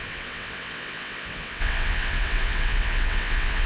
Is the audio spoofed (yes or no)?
yes